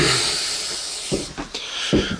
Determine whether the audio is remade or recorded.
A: recorded